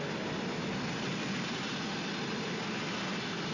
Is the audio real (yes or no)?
yes